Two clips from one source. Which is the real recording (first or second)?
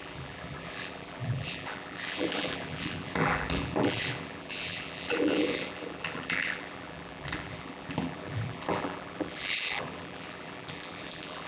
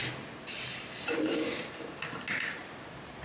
second